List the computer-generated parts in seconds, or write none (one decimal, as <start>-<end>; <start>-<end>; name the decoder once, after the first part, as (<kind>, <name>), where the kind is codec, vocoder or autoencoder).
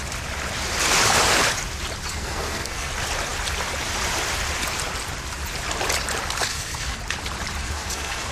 2.1-2.9 (codec, SNAC); 6.5-7.0; 7.6-8.3